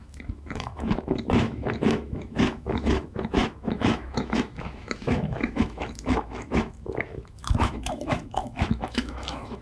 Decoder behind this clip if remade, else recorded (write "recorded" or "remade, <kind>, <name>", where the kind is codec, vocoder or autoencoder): remade, autoencoder, DAC-VAE